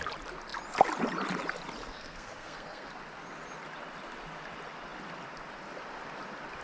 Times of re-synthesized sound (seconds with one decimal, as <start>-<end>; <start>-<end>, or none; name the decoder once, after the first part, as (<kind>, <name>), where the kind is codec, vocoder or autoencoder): 1.8-2.9 (codec, SNAC)